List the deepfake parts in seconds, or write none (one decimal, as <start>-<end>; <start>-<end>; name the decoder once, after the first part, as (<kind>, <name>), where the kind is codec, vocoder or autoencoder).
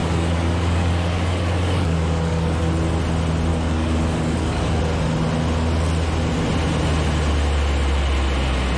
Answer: 0.0-2.7 (codec, DAC); 3.5-4.8